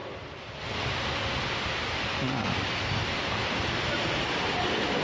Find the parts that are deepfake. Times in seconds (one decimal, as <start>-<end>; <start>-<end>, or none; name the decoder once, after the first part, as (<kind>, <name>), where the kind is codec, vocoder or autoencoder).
none